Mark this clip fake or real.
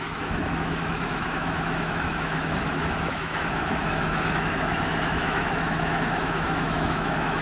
fake